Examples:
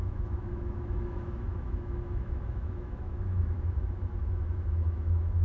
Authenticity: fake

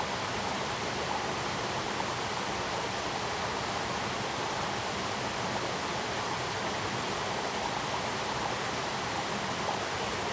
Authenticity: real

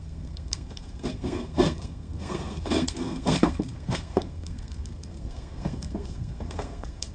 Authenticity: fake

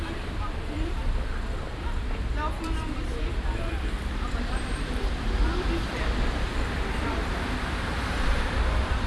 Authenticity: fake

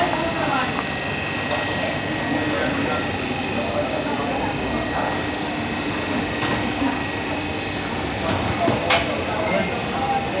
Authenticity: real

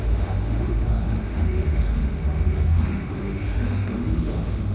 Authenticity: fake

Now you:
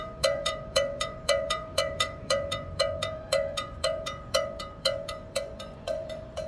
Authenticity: fake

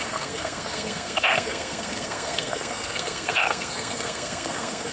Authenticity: fake